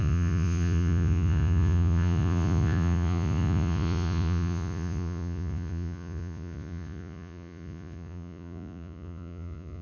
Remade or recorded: remade